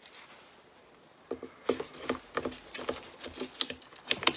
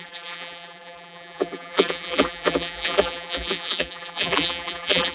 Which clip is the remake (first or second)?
second